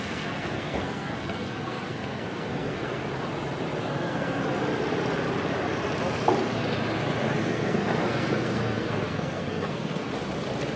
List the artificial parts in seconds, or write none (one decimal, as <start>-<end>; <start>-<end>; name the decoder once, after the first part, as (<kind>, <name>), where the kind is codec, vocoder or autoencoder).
0.0-3.0 (codec, SNAC); 3.8-4.4; 7.4-10.1